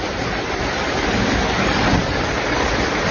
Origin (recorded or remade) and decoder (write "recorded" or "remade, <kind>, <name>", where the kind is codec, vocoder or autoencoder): remade, vocoder, BigVGAN v2